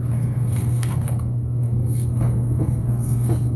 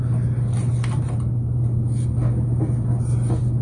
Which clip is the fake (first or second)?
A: first